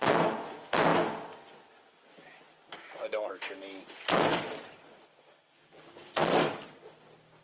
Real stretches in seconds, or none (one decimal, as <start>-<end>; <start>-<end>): 0.0-0.9; 3.3-4.3; 5.2-6.2; 6.8-7.4